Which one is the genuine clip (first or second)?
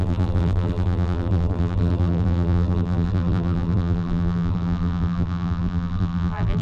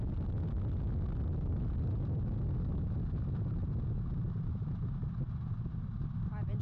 second